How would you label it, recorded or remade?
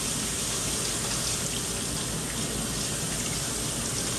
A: recorded